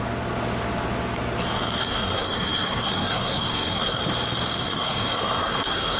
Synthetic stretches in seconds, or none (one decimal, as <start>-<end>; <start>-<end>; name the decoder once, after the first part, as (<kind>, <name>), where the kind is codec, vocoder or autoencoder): 1.8-4.0 (codec, SNAC); 4.6-6.0

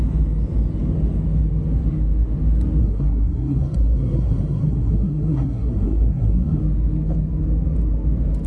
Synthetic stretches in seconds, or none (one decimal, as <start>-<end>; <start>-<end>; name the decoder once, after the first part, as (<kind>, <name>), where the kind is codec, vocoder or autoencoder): 2.8-6.6 (codec, SNAC)

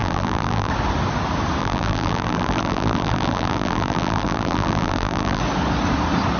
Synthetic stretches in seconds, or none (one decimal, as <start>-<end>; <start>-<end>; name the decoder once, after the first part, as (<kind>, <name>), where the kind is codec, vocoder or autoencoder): 0.0-0.7 (vocoder, BigVGAN v2); 1.6-5.4

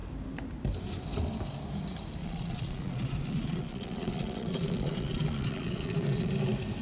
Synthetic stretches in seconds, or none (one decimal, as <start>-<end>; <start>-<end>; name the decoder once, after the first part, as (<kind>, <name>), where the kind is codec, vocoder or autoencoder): 2.2-6.3 (vocoder, Vocos)

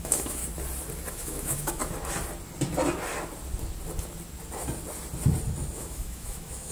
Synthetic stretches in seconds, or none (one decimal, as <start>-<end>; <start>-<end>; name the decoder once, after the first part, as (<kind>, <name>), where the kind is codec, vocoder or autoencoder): 0.0-0.4 (autoencoder, DAC-VAE); 1.1-1.8; 5.7-6.7

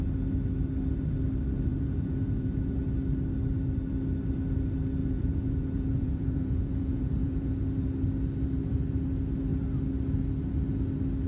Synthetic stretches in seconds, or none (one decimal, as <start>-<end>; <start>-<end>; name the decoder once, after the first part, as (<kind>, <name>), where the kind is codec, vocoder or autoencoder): 1.7-2.6 (vocoder, Vocos); 5.0-7.6